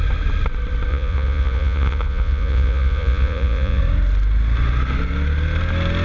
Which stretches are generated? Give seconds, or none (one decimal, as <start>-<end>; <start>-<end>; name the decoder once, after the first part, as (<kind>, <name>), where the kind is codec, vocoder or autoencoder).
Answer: 0.9-3.8 (vocoder, Vocos)